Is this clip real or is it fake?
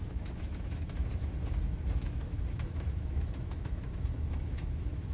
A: fake